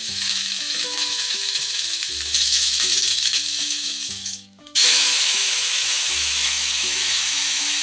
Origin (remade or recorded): remade